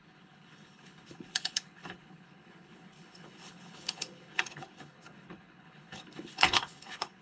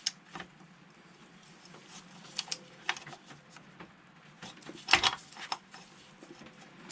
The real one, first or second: second